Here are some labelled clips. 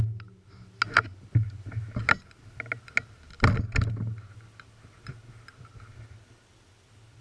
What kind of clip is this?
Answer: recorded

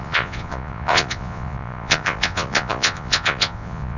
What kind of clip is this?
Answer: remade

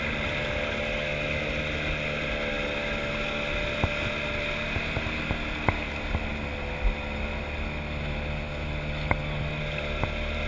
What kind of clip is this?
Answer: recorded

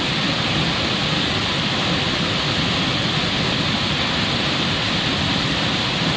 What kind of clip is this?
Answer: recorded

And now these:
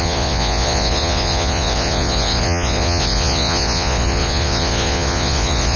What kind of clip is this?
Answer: remade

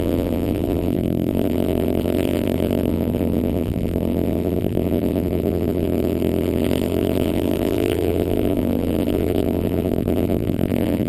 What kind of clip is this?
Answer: remade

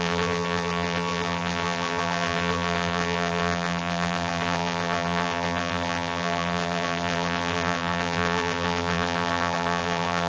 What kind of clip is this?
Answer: remade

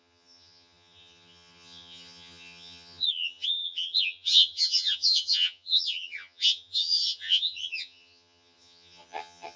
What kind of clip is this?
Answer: remade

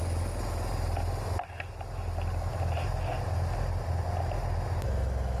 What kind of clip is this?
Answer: recorded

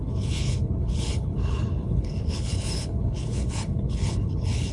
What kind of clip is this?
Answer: remade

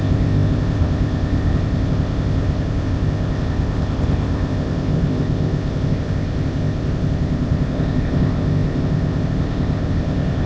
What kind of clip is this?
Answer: remade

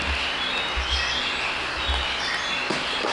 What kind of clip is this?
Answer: recorded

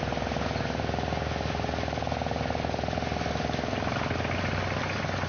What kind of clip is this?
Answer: recorded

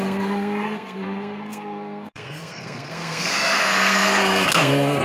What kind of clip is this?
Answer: remade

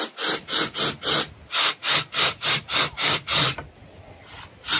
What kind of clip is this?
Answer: recorded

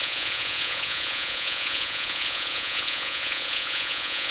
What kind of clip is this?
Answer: remade